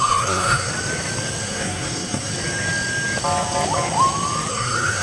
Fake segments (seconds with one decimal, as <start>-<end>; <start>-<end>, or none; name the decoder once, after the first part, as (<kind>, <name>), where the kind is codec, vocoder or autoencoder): 0.0-0.7 (codec, SNAC); 1.4-2.3; 4.5-5.0